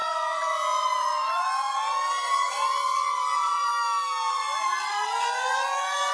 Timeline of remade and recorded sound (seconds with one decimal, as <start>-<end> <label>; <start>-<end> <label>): 0.0-3.7 remade; 3.7-4.3 recorded; 4.3-6.1 remade